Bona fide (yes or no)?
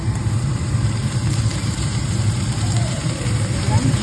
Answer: no